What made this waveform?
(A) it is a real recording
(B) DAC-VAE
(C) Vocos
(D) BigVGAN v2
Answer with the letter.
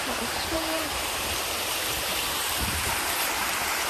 D